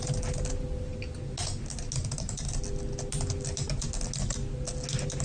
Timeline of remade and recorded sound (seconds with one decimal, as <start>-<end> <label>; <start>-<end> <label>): 0.0-5.2 recorded